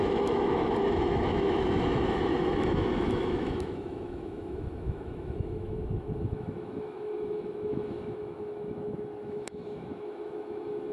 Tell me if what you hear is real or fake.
fake